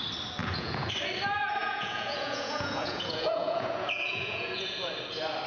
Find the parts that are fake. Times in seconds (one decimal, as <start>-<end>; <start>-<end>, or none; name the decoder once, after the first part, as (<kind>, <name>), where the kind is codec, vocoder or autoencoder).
0.4-0.9 (vocoder, Vocos); 1.6-4.9